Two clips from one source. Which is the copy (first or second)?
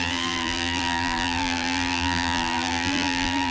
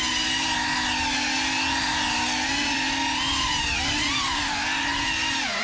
first